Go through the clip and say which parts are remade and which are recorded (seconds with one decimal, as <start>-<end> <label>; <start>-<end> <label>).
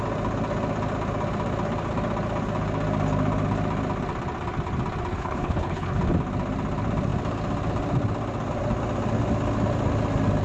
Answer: 0.0-5.1 recorded; 5.1-6.0 remade; 6.0-10.4 recorded